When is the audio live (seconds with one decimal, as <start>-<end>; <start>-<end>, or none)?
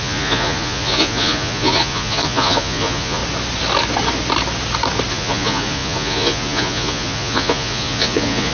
3.2-5.1